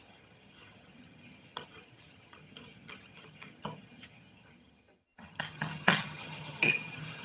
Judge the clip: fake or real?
fake